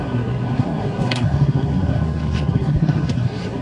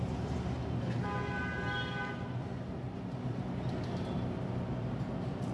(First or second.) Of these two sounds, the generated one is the first